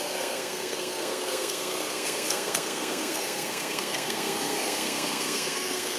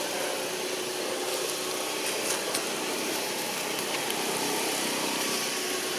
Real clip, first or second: second